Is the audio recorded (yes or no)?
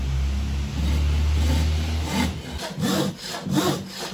yes